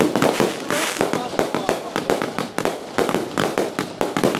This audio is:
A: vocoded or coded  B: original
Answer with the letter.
B